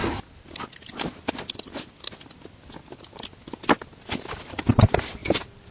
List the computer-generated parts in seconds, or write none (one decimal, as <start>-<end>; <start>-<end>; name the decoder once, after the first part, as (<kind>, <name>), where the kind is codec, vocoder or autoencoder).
none